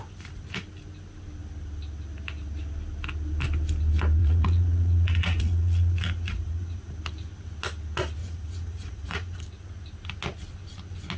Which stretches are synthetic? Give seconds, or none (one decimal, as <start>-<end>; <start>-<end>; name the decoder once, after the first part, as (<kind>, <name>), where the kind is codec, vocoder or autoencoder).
4.2-6.9 (vocoder, Vocos); 8.2-9.4